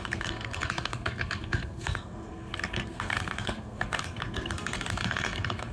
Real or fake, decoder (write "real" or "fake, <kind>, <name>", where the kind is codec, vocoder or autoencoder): fake, codec, SNAC